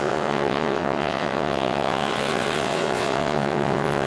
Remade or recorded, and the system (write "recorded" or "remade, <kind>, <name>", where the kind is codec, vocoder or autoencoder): remade, vocoder, WaveNeXt